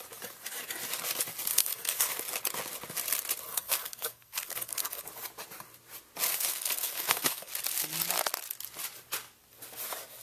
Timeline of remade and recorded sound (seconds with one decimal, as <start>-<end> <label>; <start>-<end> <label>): 0.0-1.5 recorded; 1.5-2.2 remade; 2.2-3.5 recorded; 3.5-5.0 remade; 5.0-6.3 recorded; 6.3-7.5 remade; 7.5-10.2 recorded